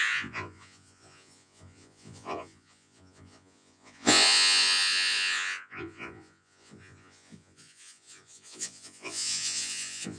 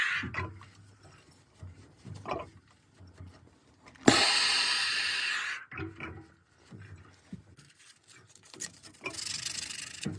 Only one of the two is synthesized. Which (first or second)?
first